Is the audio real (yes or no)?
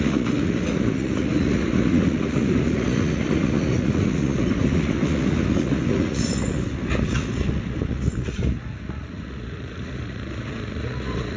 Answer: no